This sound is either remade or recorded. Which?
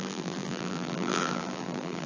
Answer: remade